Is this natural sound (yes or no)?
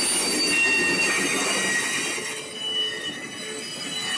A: yes